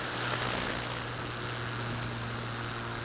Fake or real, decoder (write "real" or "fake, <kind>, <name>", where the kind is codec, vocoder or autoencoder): real